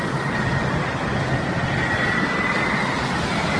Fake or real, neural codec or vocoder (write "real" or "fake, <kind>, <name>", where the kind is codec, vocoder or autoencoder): real